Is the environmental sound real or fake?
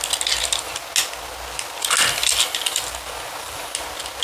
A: real